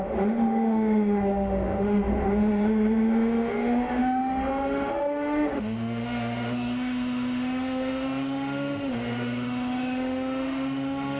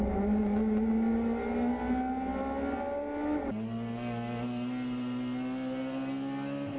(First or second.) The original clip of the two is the second